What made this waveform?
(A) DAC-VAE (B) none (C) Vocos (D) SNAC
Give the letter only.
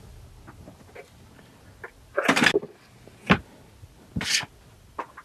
B